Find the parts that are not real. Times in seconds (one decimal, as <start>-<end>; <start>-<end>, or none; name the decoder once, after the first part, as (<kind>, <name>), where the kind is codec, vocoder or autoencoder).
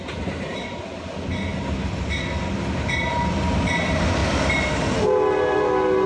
none